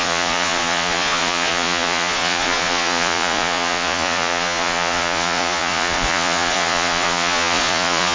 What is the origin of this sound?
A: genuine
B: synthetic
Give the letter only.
B